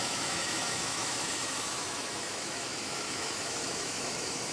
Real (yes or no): no